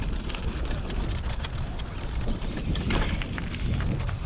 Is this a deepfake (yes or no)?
no